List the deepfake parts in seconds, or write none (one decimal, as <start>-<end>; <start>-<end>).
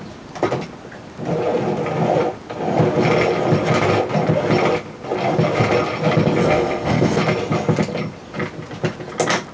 6.4-7.2